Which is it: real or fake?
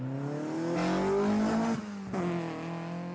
real